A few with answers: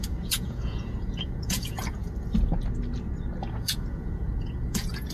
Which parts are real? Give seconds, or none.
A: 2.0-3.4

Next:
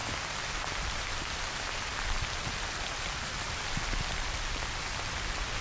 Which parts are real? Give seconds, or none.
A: 0.0-0.8; 1.9-5.6

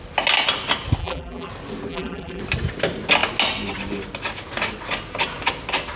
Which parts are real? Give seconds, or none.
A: 0.0-1.0; 1.5-1.9; 2.4-6.0

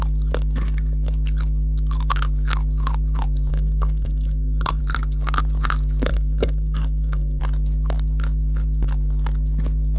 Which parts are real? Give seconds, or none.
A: 0.0-3.5; 4.8-6.1; 7.4-10.0

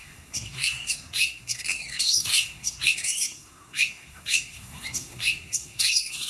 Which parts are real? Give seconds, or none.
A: none

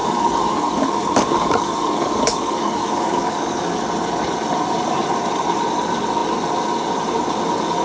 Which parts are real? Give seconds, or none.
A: 3.8-7.8